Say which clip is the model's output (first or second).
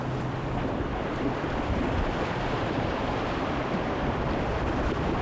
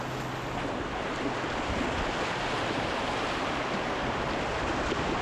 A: first